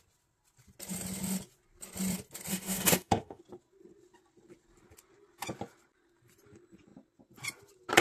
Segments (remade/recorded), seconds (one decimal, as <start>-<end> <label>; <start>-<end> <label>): 0.0-2.5 recorded; 2.5-3.4 remade; 3.4-8.0 recorded